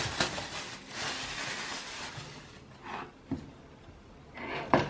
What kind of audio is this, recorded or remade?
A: recorded